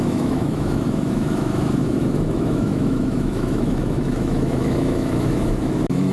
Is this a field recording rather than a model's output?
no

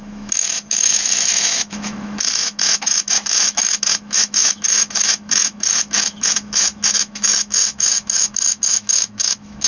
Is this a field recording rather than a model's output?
no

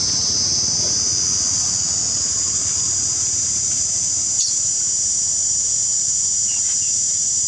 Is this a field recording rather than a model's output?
yes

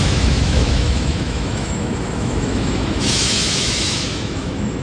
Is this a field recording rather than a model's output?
no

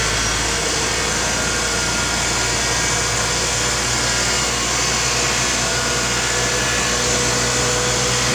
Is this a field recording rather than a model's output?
yes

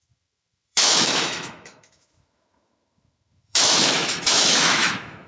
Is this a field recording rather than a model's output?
no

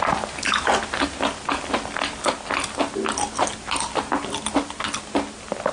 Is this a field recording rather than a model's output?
yes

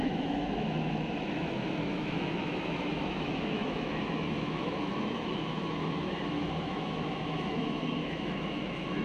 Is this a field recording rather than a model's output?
no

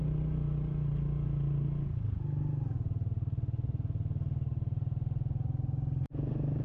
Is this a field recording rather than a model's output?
yes